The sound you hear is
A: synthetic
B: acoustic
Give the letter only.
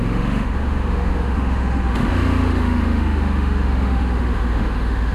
A